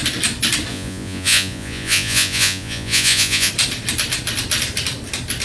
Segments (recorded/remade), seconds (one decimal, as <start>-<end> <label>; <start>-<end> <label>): 0.0-0.7 recorded; 0.7-3.5 remade; 3.5-5.4 recorded